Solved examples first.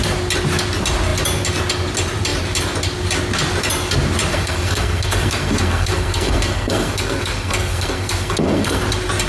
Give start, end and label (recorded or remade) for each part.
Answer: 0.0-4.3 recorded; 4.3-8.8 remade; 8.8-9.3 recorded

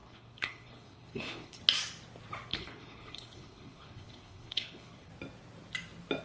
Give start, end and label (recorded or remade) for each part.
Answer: 0.0-1.6 remade; 1.6-2.5 recorded; 2.5-5.1 remade; 5.1-6.2 recorded

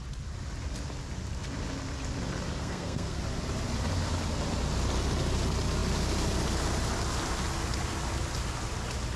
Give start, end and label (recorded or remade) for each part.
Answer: 0.0-2.6 recorded; 2.6-3.2 remade; 3.2-9.2 recorded

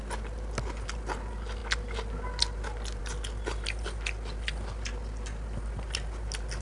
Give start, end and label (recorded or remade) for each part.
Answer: 0.0-6.6 recorded

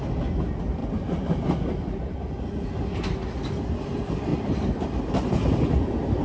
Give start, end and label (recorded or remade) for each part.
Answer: 0.0-0.8 recorded; 0.8-2.4 remade; 2.4-4.3 recorded; 4.3-5.0 remade; 5.0-6.2 recorded